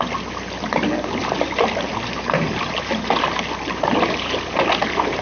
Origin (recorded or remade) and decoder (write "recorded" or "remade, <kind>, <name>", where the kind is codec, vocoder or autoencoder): recorded